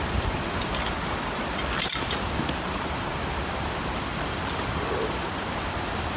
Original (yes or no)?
no